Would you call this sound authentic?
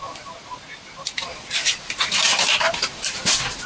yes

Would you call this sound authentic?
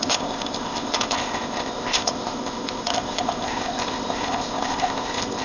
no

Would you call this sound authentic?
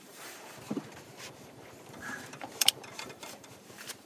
no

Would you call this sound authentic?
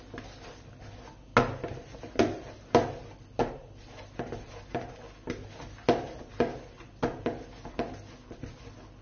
yes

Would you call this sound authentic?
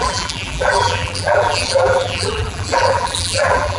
no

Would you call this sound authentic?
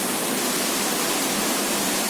yes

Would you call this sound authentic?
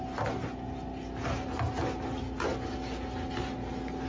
yes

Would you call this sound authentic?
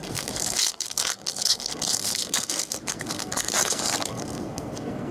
no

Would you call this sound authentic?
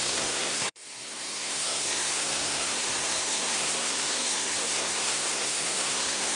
no